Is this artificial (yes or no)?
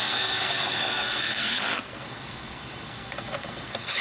yes